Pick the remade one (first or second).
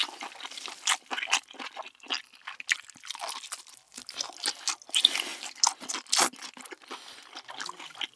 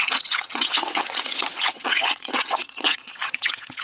second